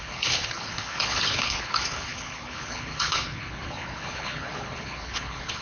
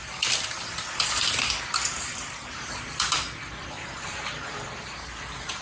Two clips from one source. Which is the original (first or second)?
second